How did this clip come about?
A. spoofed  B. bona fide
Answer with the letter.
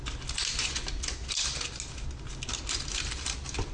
B